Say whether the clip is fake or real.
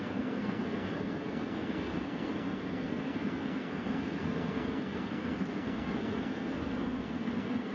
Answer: fake